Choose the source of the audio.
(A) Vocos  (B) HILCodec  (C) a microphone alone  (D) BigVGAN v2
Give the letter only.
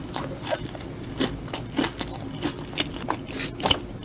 C